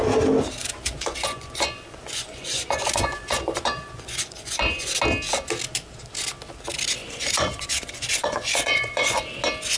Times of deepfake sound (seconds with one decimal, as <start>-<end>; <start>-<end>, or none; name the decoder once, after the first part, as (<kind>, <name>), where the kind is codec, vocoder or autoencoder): 0.6-4.9 (vocoder, Vocos); 7.0-9.2